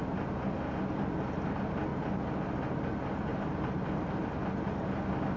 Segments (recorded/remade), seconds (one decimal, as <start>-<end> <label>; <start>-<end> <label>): 0.0-1.9 recorded; 1.9-2.9 remade; 2.9-3.3 recorded; 3.3-5.0 remade; 5.0-5.4 recorded